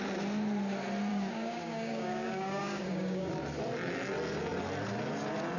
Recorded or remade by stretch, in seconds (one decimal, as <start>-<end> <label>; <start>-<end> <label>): 0.0-1.1 recorded; 1.1-3.3 remade; 3.3-5.6 recorded